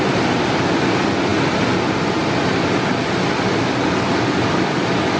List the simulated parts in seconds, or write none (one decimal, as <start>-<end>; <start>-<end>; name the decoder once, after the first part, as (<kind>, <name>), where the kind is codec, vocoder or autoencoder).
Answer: none